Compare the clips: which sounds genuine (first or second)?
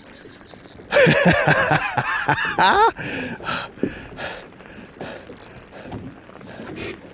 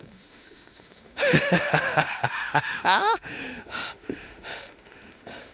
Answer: first